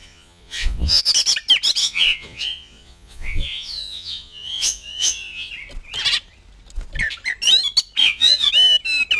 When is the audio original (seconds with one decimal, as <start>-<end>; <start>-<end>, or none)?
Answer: 1.0-1.8; 5.5-8.0; 8.5-9.2